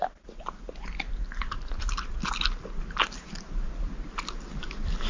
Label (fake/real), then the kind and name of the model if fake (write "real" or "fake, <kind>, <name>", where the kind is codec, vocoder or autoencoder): real